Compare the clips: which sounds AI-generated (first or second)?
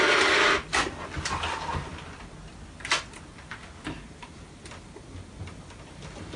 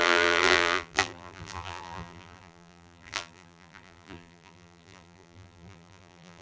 second